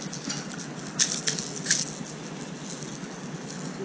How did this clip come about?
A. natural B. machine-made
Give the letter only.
A